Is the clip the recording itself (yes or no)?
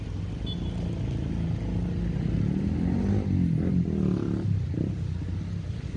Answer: yes